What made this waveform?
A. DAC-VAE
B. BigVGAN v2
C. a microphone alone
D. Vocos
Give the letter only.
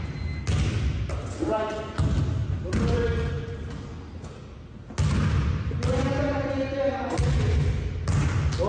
C